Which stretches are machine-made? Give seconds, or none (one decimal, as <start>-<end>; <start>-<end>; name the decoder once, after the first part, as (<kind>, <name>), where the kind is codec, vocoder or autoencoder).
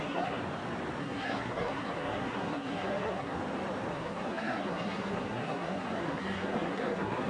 0.0-0.4 (codec, SNAC); 1.0-3.4; 3.9-7.3